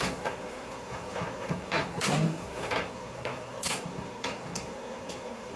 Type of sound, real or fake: fake